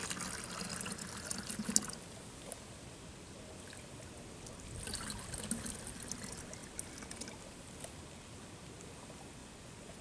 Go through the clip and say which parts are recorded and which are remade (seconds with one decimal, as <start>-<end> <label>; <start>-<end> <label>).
0.0-9.4 recorded; 9.4-10.0 remade